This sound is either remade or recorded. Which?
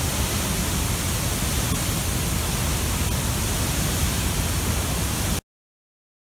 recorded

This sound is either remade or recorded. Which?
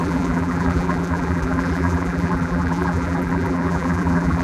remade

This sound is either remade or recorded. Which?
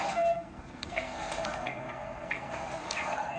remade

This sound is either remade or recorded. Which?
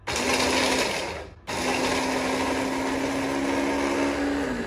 recorded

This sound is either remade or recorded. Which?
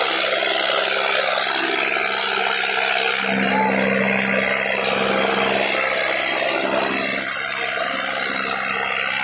recorded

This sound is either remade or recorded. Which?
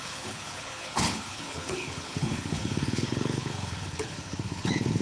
remade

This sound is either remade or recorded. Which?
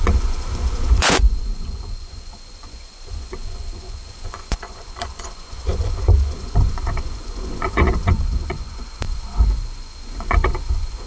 remade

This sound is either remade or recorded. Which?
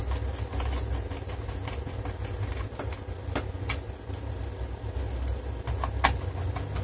recorded